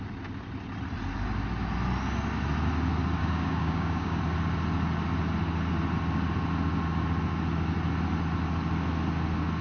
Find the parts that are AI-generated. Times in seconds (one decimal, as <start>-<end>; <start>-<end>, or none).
3.2-4.2